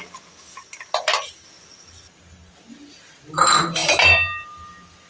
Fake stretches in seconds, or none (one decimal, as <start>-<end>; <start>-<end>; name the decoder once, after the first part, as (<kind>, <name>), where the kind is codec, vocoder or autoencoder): none